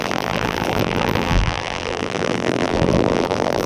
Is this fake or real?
fake